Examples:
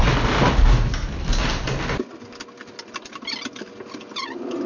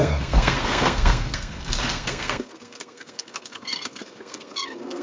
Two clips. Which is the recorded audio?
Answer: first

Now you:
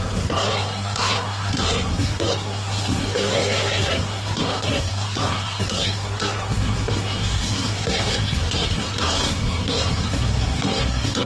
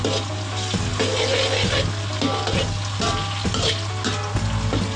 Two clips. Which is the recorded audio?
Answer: second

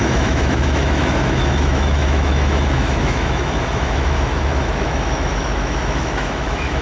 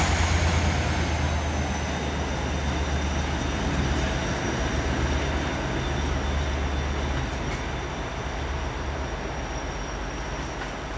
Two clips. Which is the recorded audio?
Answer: second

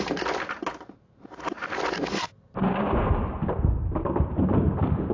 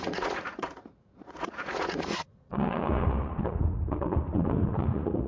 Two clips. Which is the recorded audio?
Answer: first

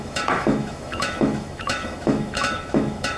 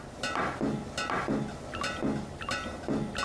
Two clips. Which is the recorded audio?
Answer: second